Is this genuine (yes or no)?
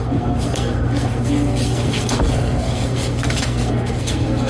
no